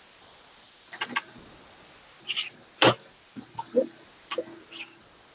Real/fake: real